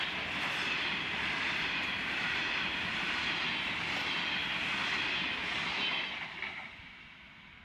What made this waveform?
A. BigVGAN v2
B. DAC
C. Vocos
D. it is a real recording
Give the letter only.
D